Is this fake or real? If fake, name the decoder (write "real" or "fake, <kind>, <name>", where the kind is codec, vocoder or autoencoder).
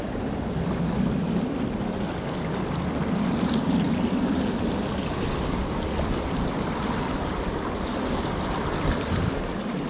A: real